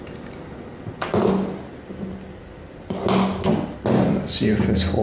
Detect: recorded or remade recorded